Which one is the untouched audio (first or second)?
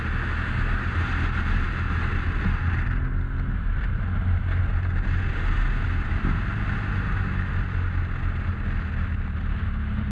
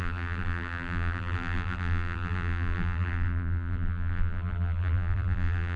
first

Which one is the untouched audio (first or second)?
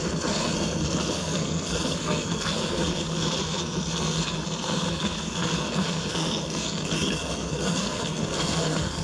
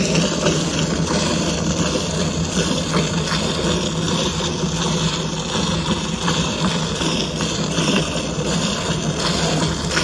second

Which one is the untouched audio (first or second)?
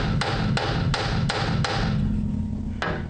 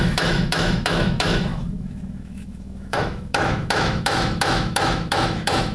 first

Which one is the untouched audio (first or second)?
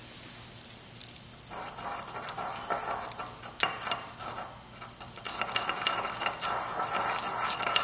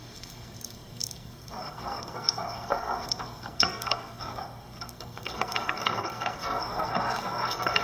first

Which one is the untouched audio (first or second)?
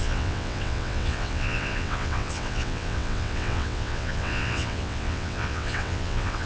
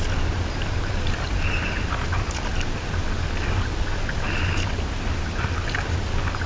second